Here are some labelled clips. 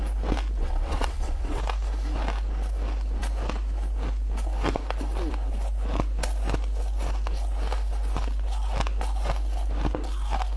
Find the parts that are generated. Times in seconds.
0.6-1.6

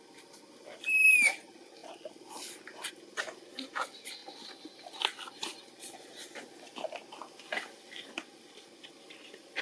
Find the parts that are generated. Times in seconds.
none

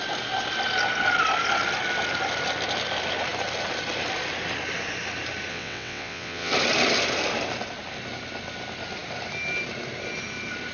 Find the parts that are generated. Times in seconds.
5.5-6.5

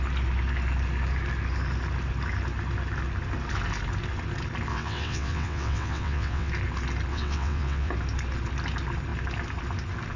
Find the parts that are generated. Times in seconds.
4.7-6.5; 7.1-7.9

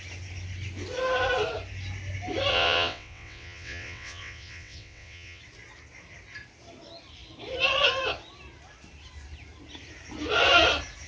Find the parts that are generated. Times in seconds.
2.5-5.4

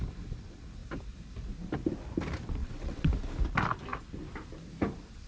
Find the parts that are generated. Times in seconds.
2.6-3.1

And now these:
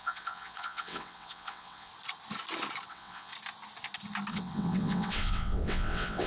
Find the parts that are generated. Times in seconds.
0.0-1.9; 2.9-3.3; 4.3-6.3

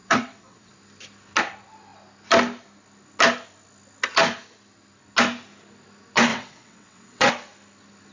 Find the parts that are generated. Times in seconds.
0.0-0.7; 6.3-7.3